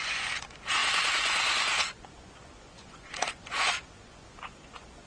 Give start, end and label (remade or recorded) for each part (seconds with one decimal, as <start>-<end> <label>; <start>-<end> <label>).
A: 0.0-5.1 remade